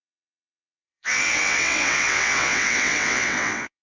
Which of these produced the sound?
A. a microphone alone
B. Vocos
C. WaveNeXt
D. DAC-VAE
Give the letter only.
C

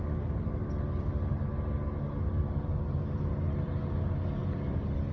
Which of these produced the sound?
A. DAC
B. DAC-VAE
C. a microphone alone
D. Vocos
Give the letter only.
C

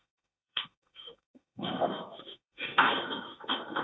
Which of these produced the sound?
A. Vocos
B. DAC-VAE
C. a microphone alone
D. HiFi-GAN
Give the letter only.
B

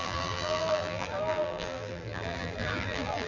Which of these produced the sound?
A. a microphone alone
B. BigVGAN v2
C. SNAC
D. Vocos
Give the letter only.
B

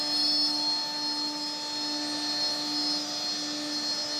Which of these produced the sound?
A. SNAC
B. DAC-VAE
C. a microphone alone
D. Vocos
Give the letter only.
C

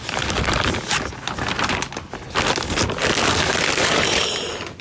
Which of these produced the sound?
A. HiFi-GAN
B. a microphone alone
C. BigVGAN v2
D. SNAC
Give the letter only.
B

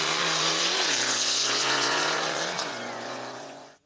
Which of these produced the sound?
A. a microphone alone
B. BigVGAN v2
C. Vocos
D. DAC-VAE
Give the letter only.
C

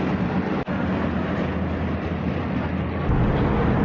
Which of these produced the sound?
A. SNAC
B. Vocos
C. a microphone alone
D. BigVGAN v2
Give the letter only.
C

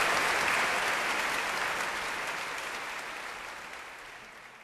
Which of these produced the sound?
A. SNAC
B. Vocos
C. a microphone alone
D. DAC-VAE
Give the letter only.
C